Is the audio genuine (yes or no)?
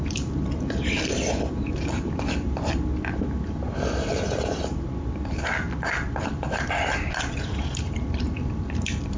no